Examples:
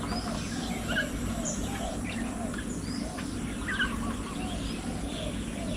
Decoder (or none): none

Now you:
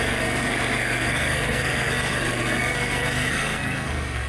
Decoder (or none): codec, SNAC